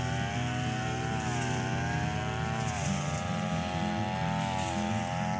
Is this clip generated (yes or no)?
no